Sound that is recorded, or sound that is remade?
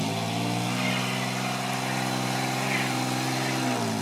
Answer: remade